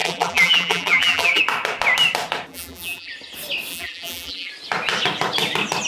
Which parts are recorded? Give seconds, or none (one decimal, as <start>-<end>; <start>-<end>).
1.4-2.5; 3.1-3.7; 4.5-5.9